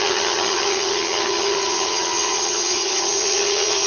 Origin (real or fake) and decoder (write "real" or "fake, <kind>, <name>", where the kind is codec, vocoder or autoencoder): fake, vocoder, HiFi-GAN